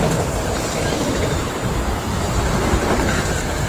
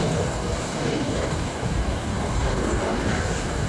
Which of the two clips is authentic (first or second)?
first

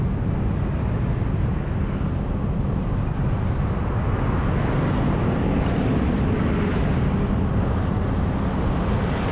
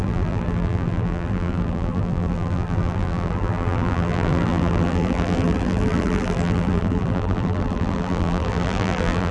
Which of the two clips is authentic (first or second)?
first